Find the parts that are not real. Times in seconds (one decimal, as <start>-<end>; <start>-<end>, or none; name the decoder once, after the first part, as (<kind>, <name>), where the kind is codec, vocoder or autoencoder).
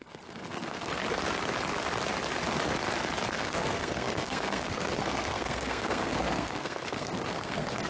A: 0.0-1.0 (codec, SNAC); 3.3-7.9